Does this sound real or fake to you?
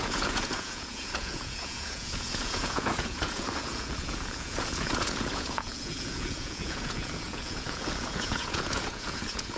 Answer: fake